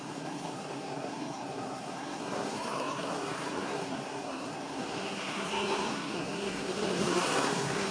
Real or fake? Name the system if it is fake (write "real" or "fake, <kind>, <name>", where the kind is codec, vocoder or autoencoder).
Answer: fake, codec, SNAC